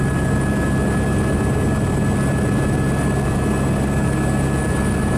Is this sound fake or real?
real